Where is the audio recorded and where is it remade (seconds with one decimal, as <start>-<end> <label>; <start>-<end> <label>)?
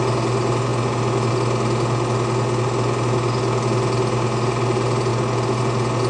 0.0-6.1 recorded